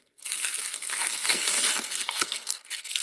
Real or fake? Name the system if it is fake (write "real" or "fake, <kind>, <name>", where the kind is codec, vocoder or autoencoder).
fake, codec, SNAC